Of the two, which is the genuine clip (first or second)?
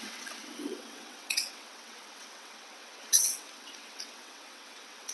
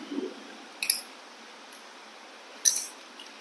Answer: second